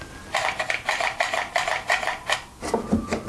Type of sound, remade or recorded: recorded